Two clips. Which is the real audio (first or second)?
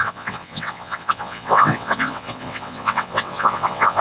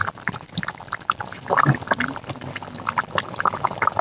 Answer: second